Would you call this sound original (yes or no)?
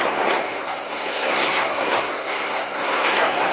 no